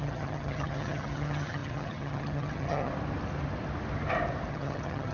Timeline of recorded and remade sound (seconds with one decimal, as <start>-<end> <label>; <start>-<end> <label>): 0.0-2.9 remade; 2.9-4.5 recorded; 4.5-5.1 remade